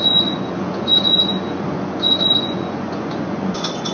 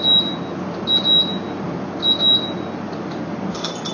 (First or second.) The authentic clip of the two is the second